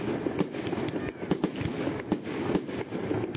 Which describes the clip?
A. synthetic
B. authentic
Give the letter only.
B